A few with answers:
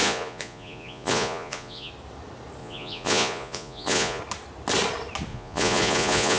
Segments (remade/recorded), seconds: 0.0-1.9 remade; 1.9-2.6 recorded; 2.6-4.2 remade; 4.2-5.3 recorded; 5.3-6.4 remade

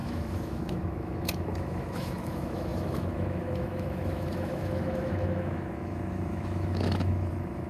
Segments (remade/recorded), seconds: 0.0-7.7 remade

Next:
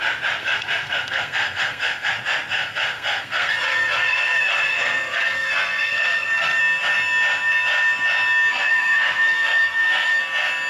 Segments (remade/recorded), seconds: 0.0-0.4 recorded; 0.4-2.1 remade; 2.1-2.5 recorded; 2.5-6.6 remade; 6.6-8.5 recorded; 8.5-10.2 remade; 10.2-10.7 recorded

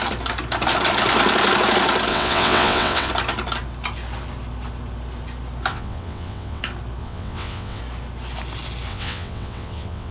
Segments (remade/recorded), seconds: 0.0-2.1 recorded; 2.1-3.1 remade; 3.1-5.7 recorded; 5.7-6.6 remade; 6.6-7.0 recorded; 7.0-7.8 remade; 7.8-8.9 recorded; 8.9-10.1 remade